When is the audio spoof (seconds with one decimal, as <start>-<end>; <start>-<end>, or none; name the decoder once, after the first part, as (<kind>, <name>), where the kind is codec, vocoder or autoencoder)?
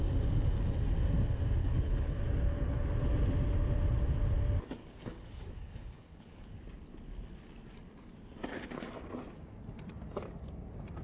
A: 1.6-2.2 (codec, HILCodec); 4.8-6.5